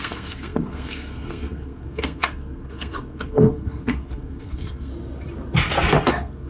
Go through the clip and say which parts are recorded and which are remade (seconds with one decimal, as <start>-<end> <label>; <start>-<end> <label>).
0.0-4.9 remade; 4.9-6.1 recorded; 6.1-6.5 remade